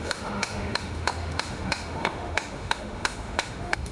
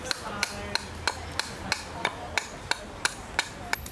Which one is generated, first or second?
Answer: first